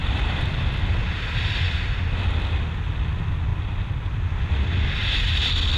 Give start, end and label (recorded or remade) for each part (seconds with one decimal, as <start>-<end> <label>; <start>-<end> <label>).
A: 0.0-0.6 remade; 0.6-5.8 recorded